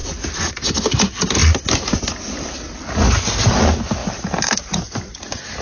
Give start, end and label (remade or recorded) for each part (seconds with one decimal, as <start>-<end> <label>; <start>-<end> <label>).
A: 0.0-4.0 recorded; 4.0-4.7 remade; 4.7-5.6 recorded